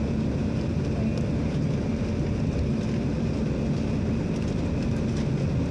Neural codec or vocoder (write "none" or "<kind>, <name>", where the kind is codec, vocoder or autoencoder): none